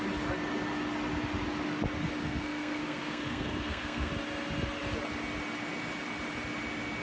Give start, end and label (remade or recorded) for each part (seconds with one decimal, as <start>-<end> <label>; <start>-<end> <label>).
0.0-2.2 recorded; 2.2-4.1 remade; 4.1-7.0 recorded